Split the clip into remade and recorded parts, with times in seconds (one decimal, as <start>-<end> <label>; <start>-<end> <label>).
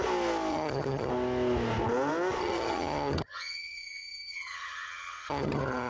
0.0-0.5 recorded; 0.5-1.1 remade; 1.1-2.4 recorded; 2.4-5.9 remade